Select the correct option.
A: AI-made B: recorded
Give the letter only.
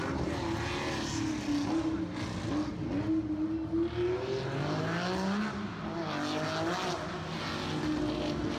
B